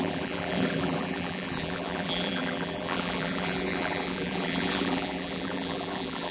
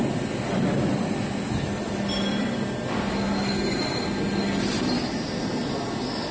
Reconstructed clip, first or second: first